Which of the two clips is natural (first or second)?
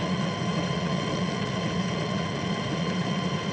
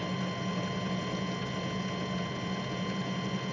second